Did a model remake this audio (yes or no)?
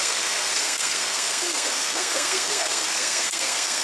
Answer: yes